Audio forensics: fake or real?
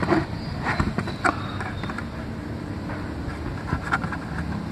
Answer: real